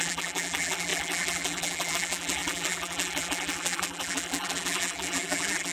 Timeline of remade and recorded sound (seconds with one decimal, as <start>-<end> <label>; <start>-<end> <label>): 0.0-5.7 remade